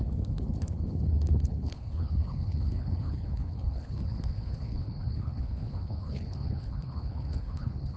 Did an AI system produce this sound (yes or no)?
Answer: yes